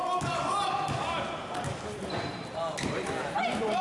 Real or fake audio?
real